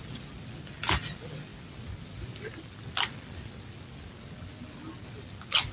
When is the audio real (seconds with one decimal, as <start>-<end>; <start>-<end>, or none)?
0.0-5.7